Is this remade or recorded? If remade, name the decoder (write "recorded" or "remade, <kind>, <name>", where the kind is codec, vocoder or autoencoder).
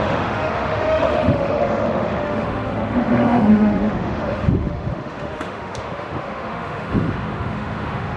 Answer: remade, autoencoder, DAC-VAE